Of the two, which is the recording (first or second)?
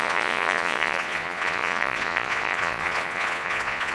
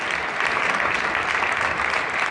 second